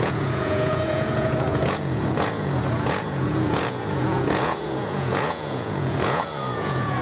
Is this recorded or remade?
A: remade